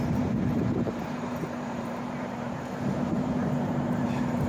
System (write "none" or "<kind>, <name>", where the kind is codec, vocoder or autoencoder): vocoder, BigVGAN v2